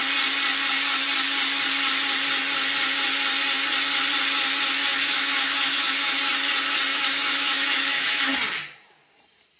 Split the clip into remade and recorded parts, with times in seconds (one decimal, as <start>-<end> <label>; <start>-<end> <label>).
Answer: 0.0-4.9 recorded; 4.9-6.2 remade; 6.2-6.9 recorded; 6.9-8.3 remade; 8.3-9.6 recorded